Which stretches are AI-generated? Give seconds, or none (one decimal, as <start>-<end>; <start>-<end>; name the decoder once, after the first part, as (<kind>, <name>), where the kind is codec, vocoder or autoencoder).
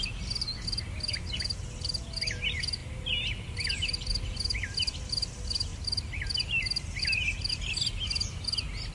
none